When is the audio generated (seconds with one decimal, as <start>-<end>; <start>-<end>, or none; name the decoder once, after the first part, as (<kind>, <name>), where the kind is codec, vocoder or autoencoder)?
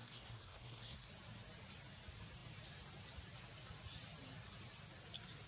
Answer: 0.0-1.1 (codec, SNAC)